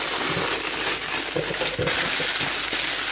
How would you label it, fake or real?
real